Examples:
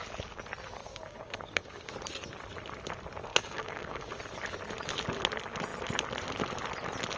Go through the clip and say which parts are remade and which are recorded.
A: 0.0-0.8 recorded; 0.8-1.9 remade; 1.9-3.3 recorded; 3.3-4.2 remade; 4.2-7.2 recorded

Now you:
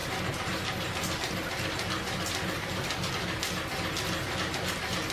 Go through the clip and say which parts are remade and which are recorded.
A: 0.0-5.1 recorded

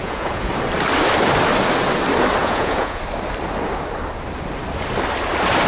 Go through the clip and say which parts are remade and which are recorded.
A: 0.0-0.5 remade; 0.5-2.4 recorded; 2.4-3.0 remade; 3.0-5.7 recorded

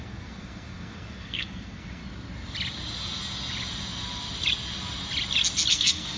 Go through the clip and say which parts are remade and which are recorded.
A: 0.0-2.0 remade; 2.0-5.7 recorded; 5.7-6.2 remade

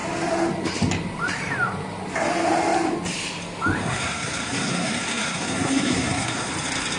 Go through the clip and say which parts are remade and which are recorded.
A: 0.0-3.8 recorded; 3.8-6.5 remade; 6.5-7.0 recorded

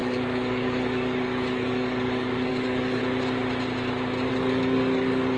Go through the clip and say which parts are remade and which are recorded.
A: 0.0-3.0 remade; 3.0-4.3 recorded; 4.3-5.4 remade